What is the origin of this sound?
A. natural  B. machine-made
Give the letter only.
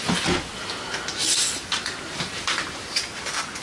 A